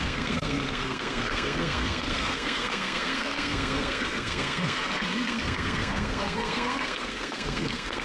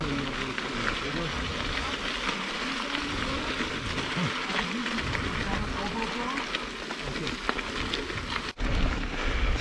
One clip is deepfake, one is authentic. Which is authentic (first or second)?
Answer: second